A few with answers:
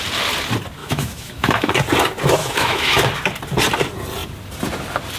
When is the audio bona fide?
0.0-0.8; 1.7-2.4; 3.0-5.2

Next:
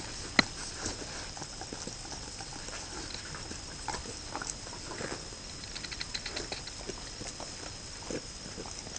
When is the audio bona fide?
0.0-9.0

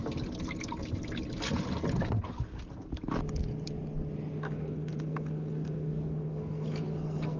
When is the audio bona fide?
0.0-4.4

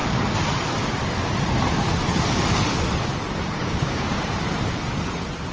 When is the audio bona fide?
0.0-3.6; 4.4-5.5

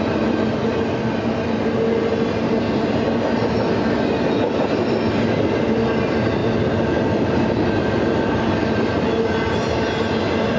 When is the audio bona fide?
0.0-10.6